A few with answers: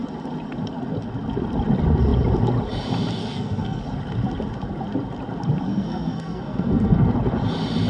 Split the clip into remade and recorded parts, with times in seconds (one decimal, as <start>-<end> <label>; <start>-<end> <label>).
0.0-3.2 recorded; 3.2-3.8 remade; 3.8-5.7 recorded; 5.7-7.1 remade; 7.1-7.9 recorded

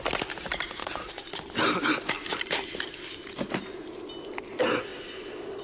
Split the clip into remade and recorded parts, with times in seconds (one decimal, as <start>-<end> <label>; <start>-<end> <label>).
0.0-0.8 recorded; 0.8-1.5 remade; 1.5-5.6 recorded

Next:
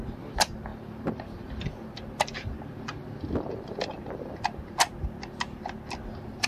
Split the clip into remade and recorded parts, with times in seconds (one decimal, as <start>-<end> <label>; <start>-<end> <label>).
0.0-6.5 recorded

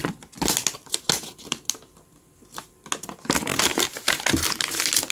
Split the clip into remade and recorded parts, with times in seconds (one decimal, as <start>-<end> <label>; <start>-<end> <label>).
0.0-3.5 recorded; 3.5-4.2 remade; 4.2-5.1 recorded

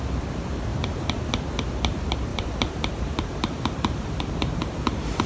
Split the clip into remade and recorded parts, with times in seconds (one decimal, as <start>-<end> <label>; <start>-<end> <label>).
0.0-0.7 recorded; 0.7-1.2 remade; 1.2-2.3 recorded; 2.3-4.6 remade; 4.6-5.3 recorded